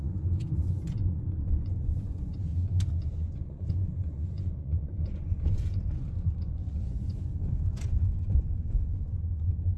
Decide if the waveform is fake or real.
fake